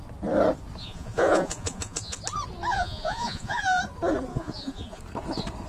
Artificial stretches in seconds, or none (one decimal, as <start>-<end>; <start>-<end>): 0.8-2.2; 2.7-3.8; 4.3-5.0